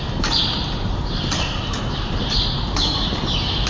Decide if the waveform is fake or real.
fake